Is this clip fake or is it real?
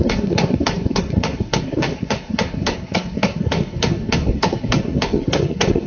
fake